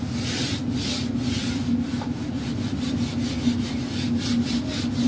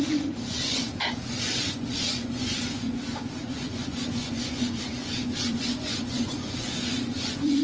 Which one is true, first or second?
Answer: first